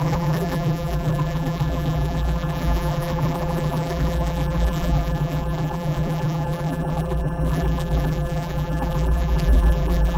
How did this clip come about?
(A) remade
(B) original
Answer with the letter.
A